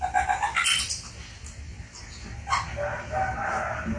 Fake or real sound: real